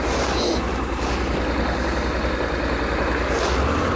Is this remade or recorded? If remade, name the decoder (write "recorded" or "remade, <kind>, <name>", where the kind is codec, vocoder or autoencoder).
recorded